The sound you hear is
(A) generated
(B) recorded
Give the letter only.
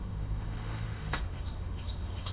A